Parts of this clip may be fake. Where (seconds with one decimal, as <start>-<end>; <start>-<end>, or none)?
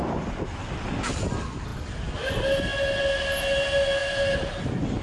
0.0-0.6